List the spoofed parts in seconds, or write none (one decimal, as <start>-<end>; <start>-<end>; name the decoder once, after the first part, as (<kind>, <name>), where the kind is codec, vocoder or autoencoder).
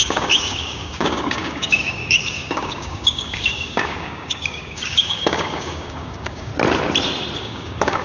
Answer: 0.0-6.5 (codec, DAC); 7.4-8.0